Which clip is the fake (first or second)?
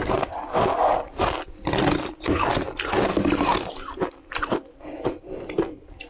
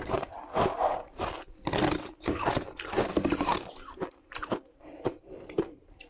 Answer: second